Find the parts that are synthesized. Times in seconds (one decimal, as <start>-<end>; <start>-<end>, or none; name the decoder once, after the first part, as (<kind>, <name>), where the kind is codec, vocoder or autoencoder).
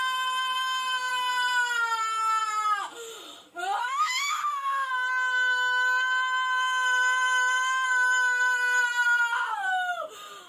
3.8-4.9 (autoencoder, DAC-VAE)